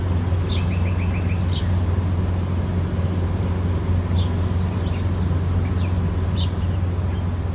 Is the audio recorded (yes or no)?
yes